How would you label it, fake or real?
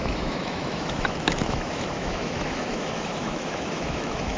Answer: fake